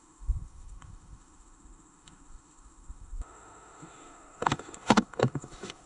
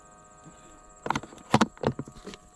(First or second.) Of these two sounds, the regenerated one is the first